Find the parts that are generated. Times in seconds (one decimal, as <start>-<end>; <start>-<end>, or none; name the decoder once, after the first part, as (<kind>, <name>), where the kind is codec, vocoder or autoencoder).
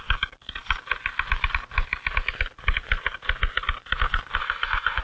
4.4-5.0 (autoencoder, DAC-VAE)